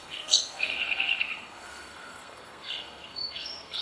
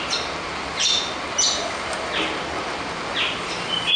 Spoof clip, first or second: first